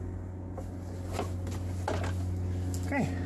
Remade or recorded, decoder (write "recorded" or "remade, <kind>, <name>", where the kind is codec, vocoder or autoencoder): recorded